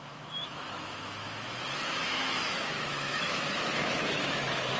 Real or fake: fake